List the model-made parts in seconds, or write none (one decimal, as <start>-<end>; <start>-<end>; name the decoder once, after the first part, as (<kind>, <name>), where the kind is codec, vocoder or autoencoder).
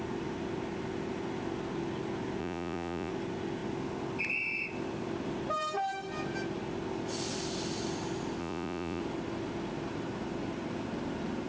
2.4-3.1 (vocoder, Vocos); 8.4-9.0